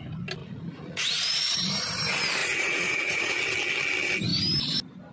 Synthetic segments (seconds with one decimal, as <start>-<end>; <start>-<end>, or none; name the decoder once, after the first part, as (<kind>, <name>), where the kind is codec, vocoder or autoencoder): 0.4-1.6 (vocoder, Vocos); 2.4-3.4